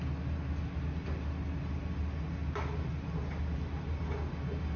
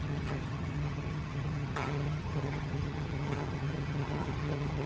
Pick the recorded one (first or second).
first